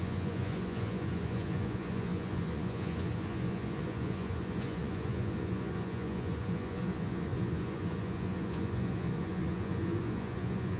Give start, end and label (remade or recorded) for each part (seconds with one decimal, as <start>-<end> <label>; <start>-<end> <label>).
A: 0.0-10.8 remade